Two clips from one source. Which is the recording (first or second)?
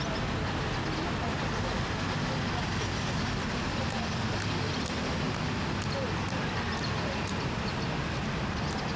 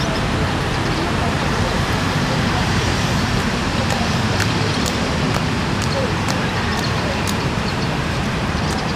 first